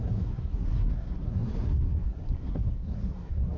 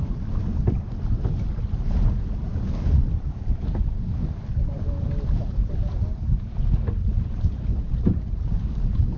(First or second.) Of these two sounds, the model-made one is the first